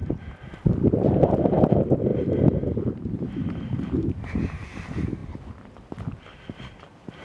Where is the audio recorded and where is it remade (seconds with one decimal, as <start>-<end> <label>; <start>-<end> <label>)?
0.0-7.2 remade